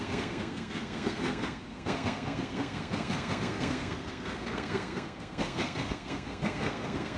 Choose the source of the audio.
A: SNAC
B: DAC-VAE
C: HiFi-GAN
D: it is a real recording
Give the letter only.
A